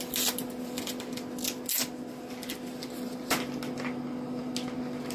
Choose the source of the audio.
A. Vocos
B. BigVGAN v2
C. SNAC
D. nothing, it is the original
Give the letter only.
D